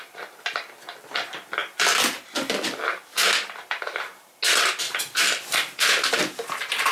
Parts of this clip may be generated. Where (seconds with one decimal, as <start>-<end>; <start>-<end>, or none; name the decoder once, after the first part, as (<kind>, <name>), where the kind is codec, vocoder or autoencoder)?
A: none